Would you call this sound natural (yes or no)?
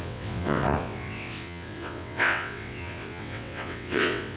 no